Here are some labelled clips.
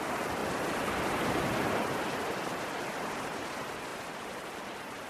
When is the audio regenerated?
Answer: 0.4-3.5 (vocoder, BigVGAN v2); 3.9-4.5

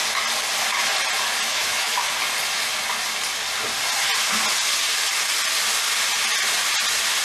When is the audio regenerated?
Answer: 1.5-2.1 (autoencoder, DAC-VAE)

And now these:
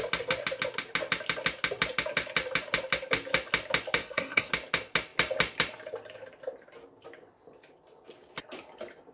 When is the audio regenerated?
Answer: 4.0-4.5 (codec, SNAC)